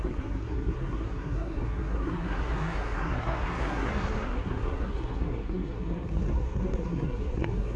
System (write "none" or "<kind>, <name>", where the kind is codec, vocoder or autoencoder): codec, SNAC